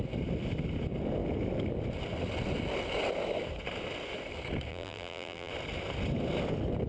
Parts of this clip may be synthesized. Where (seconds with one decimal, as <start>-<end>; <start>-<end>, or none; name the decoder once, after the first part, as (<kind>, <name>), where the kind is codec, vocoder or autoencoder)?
4.7-5.5 (vocoder, BigVGAN v2)